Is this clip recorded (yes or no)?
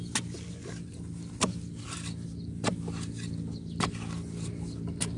yes